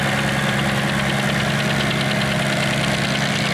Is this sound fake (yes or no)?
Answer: no